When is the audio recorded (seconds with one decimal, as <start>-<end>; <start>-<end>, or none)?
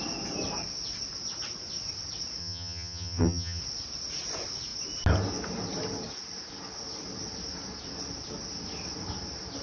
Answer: 0.0-2.4; 3.6-9.6